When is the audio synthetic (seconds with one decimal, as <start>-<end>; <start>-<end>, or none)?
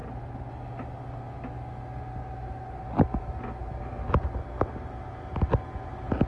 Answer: none